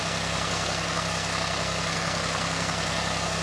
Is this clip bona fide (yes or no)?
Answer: no